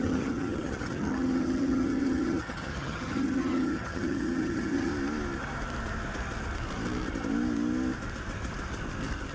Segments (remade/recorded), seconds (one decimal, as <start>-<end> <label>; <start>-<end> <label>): 0.0-4.9 remade; 4.9-9.3 recorded